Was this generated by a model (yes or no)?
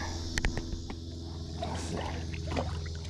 no